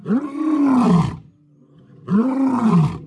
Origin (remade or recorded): recorded